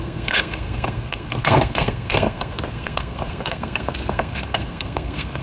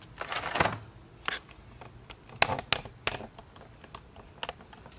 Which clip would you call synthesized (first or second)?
first